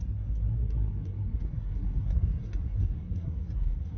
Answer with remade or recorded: remade